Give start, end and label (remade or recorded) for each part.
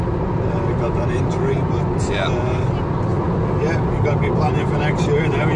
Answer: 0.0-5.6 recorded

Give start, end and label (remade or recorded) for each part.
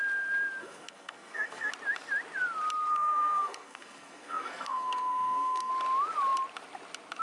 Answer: 0.0-0.6 recorded; 0.6-1.7 remade; 1.7-2.9 recorded; 2.9-5.7 remade; 5.7-7.2 recorded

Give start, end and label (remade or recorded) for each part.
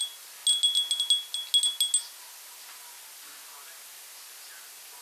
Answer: 0.0-5.0 recorded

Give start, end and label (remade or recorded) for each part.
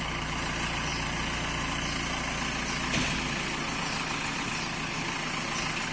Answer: 0.0-5.9 recorded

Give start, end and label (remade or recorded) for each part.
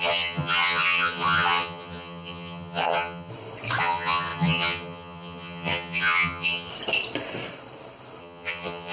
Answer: 0.0-3.3 remade; 3.3-3.8 recorded; 3.8-6.7 remade; 6.7-8.2 recorded; 8.2-8.9 remade